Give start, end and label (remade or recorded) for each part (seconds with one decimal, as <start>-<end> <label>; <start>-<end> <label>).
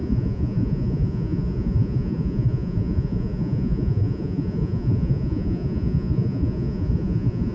0.0-7.5 remade